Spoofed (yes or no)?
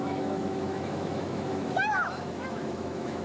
yes